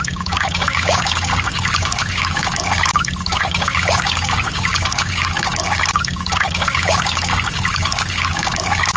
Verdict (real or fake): fake